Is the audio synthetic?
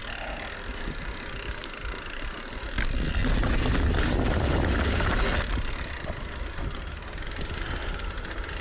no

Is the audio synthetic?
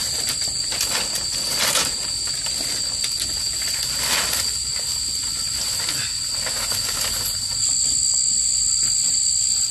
no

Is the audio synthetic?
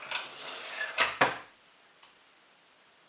yes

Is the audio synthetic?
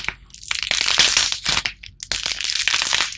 no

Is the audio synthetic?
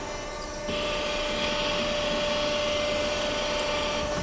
no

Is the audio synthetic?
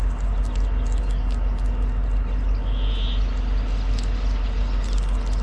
no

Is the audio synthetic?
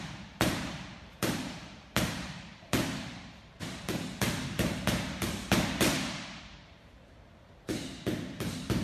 yes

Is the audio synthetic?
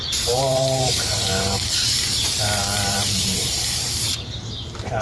yes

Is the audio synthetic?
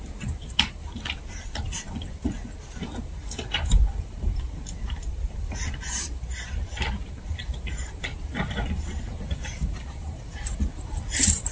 yes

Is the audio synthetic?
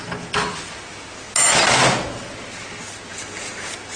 no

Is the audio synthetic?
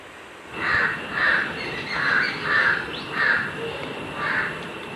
yes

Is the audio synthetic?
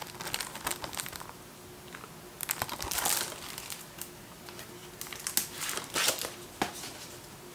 no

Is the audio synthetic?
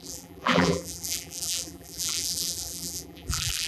yes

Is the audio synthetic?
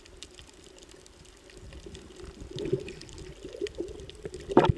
no